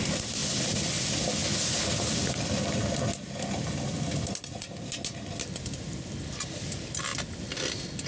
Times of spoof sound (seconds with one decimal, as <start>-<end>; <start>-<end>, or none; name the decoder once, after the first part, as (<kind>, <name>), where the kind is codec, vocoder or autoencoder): none